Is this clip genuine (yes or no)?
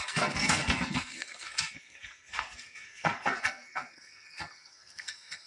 no